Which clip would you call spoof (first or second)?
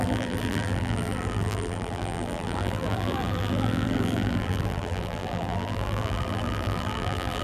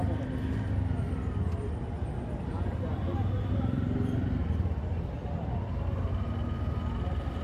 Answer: first